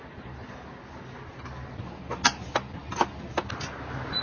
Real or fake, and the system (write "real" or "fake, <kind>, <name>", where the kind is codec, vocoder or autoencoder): real